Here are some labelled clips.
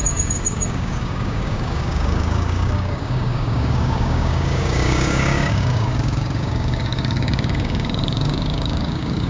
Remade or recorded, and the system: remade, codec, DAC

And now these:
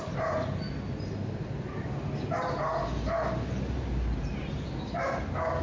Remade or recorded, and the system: recorded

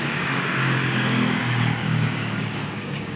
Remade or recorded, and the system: remade, codec, DAC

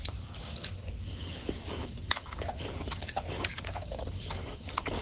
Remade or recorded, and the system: remade, codec, DAC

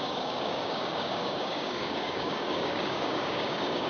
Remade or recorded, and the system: remade, codec, DAC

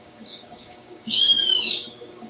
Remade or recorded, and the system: remade, codec, DAC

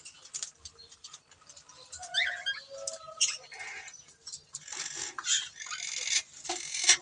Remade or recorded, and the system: recorded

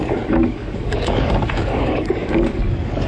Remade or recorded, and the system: remade, codec, DAC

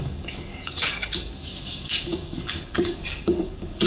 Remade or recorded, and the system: remade, codec, DAC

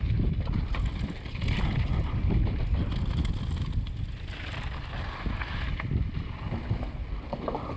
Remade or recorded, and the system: recorded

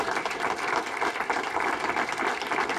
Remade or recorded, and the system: recorded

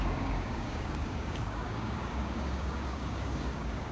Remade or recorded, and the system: remade, codec, DAC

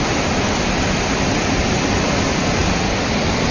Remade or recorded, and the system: recorded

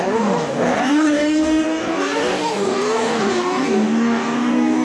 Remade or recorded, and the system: remade, codec, DAC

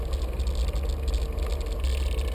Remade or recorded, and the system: recorded